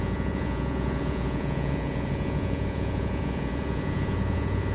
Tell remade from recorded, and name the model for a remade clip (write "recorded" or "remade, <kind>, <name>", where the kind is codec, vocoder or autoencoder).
remade, vocoder, Vocos